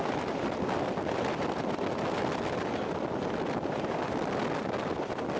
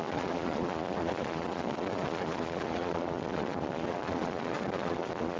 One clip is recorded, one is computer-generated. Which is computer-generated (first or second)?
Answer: second